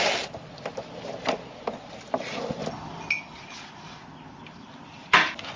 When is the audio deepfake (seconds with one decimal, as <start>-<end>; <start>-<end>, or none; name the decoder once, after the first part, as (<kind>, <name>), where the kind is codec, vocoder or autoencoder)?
none